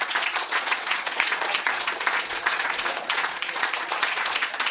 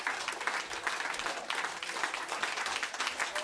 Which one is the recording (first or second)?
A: second